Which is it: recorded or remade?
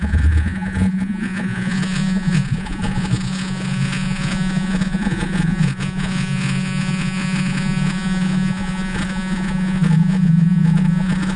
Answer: remade